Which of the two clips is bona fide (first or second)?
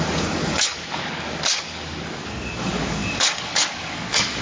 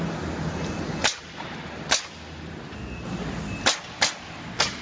second